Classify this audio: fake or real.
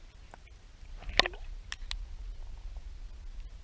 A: real